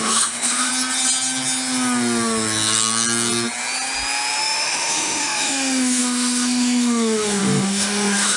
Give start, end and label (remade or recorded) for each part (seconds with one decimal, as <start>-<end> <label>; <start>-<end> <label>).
0.0-0.7 remade; 0.7-4.4 recorded; 4.4-8.4 remade